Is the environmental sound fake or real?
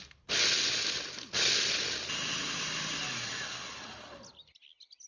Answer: real